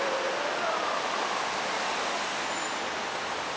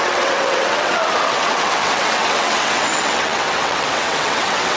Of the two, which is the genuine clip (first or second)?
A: first